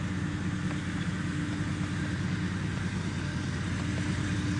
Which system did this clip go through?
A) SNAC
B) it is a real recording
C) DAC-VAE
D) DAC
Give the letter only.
B